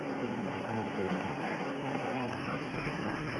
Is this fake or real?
fake